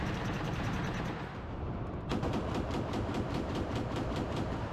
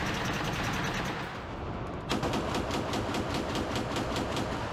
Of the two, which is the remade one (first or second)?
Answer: first